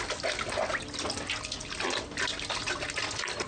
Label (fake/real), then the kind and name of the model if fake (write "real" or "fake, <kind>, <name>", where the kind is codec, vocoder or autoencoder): real